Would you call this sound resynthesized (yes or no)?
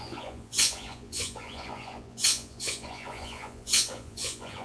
yes